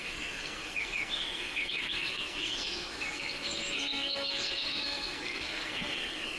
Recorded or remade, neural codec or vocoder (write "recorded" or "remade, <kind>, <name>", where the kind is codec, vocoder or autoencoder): remade, codec, SNAC